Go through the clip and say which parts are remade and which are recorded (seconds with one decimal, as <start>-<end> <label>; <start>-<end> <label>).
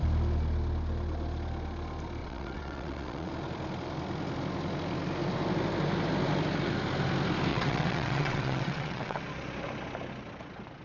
0.0-2.2 recorded; 2.2-3.3 remade; 3.3-7.5 recorded; 7.5-9.2 remade; 9.2-10.8 recorded